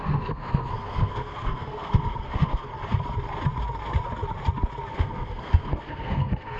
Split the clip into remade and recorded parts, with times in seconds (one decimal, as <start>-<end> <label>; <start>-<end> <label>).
0.0-2.7 remade; 2.7-4.9 recorded; 4.9-6.6 remade